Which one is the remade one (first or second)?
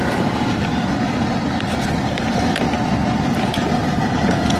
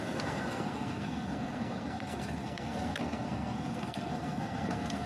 second